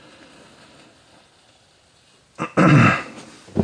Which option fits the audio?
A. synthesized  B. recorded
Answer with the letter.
B